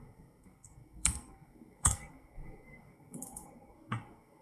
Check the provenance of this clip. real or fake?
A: fake